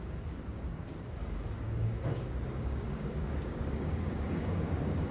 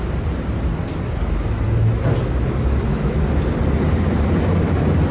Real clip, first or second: second